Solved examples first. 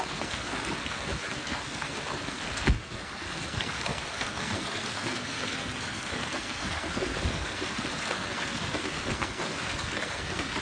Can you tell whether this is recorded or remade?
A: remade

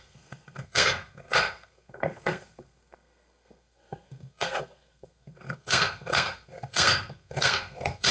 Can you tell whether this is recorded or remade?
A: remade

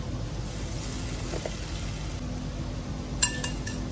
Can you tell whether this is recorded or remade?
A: recorded